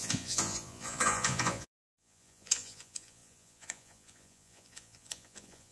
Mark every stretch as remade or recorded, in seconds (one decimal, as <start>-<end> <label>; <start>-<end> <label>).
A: 0.0-5.7 remade

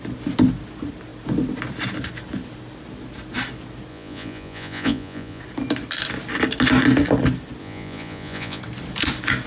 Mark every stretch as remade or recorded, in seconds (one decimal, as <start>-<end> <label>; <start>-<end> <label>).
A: 0.0-3.9 recorded; 3.9-5.4 remade; 5.4-7.6 recorded; 7.6-8.6 remade; 8.6-9.5 recorded